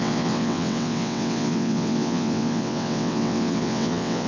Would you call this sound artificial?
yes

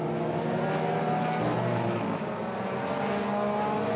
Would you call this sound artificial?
no